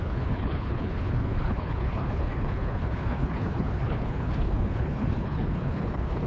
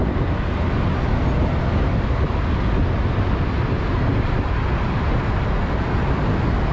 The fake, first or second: first